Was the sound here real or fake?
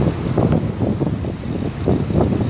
real